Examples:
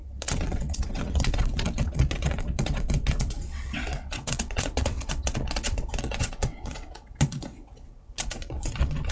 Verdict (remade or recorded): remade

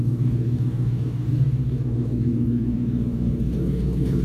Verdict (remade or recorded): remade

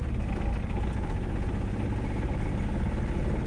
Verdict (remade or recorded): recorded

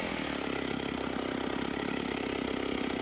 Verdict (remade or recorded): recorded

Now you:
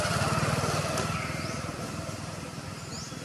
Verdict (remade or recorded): recorded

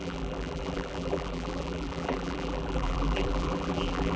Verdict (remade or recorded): remade